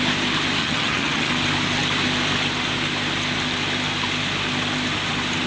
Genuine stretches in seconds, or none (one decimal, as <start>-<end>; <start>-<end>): 0.0-0.6; 1.3-5.5